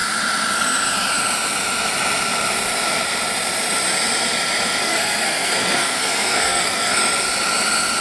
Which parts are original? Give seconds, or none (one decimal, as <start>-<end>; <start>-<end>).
0.0-4.8; 7.0-8.0